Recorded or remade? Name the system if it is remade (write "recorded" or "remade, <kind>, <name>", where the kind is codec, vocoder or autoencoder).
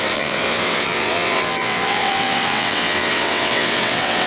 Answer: remade, vocoder, WaveNeXt